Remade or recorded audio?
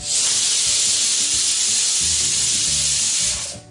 recorded